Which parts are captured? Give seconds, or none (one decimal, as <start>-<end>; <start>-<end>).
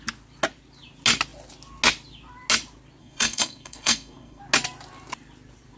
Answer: 0.0-3.0; 4.4-5.8